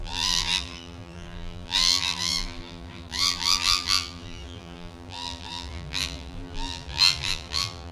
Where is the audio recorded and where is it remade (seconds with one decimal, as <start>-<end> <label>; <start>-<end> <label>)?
0.0-7.9 remade